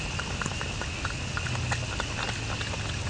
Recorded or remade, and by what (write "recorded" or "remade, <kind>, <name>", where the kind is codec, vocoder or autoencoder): recorded